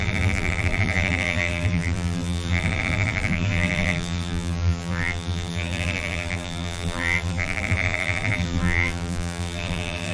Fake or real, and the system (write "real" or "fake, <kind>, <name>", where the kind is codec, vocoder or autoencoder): fake, vocoder, BigVGAN v2